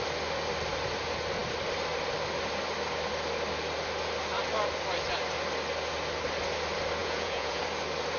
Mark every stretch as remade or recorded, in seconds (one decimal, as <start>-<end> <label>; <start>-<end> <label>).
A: 0.0-7.0 recorded; 7.0-7.6 remade; 7.6-8.2 recorded